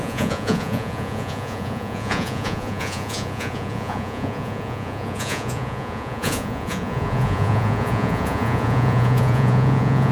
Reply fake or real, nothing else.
fake